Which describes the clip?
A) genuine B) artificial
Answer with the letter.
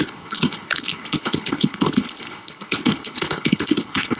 B